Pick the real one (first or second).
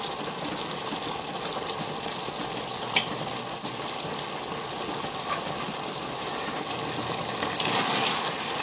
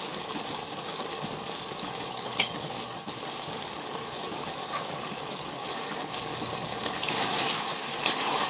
first